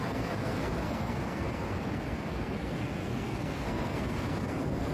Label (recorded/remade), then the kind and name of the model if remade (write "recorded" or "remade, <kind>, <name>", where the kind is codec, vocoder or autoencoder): remade, codec, SNAC